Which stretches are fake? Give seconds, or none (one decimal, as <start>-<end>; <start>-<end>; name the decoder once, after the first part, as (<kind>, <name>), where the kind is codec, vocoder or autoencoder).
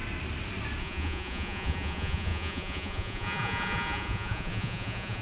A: 0.8-5.2 (vocoder, Vocos)